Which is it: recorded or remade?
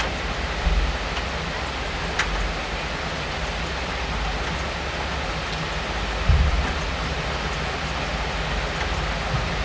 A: recorded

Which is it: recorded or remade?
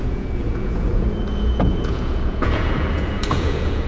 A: remade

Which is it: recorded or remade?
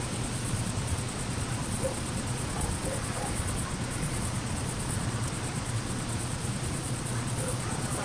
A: remade